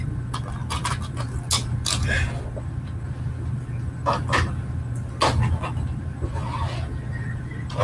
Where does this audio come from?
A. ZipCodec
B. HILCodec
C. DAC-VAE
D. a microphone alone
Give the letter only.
D